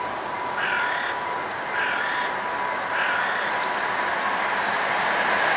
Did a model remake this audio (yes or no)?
no